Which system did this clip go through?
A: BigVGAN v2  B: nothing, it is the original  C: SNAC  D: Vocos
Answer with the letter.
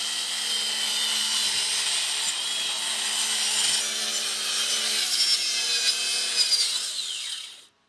B